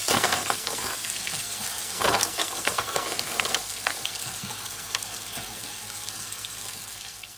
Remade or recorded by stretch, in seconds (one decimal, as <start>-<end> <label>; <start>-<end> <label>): 0.0-7.4 remade